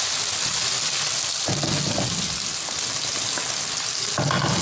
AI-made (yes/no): no